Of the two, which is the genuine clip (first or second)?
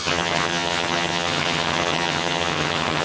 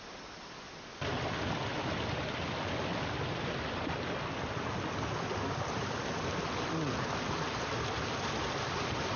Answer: second